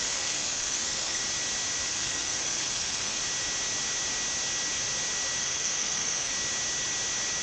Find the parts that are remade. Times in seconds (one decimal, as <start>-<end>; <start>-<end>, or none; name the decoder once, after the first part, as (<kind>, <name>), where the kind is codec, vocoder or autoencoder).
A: 0.0-1.2 (codec, SNAC); 1.9-3.2; 5.4-6.3